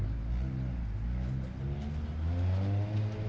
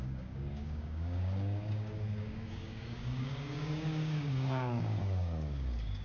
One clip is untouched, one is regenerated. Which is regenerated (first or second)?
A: second